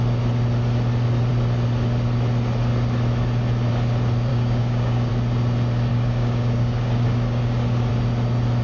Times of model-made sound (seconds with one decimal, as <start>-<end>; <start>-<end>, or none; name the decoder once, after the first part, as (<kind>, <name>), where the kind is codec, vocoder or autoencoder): 4.3-5.1 (codec, DAC); 5.9-7.9

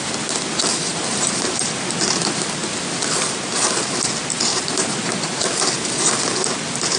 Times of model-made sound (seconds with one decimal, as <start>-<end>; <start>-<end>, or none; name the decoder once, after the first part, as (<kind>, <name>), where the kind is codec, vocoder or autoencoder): 0.9-2.0 (vocoder, BigVGAN v2); 4.5-5.4

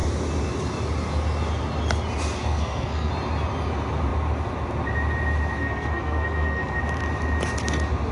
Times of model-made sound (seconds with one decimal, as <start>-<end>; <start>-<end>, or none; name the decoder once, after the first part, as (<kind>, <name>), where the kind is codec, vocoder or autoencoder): 2.4-3.1 (codec, SNAC); 5.6-6.8

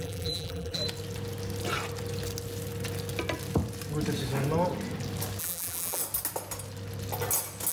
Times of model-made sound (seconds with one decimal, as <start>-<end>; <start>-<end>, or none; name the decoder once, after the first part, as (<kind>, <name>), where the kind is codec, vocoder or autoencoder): 0.0-0.8 (vocoder, BigVGAN v2); 5.4-6.0